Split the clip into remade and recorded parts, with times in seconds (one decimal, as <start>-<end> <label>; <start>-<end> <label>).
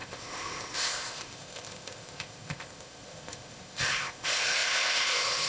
0.0-5.5 remade